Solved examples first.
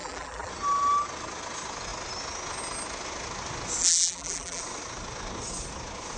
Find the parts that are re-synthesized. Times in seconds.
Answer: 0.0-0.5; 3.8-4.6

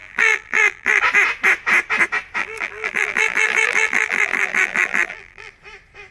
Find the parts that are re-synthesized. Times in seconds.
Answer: 0.0-1.0; 2.4-5.5

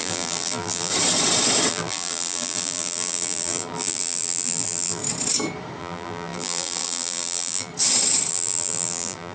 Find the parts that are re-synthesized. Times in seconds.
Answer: 0.0-0.9; 1.7-5.0; 5.8-7.7; 8.3-9.3